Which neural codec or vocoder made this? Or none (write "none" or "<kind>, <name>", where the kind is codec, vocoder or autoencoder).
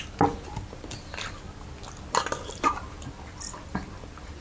none